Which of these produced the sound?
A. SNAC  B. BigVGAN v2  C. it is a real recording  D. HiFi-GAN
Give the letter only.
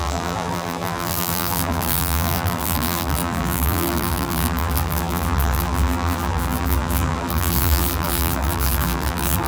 B